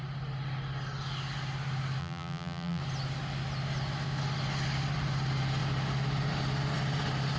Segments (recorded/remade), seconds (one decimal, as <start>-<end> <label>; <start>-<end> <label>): 0.0-2.0 recorded; 2.0-2.8 remade; 2.8-7.4 recorded